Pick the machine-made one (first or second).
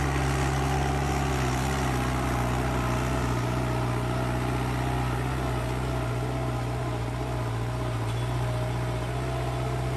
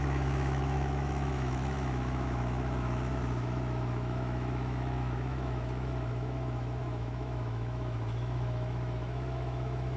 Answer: second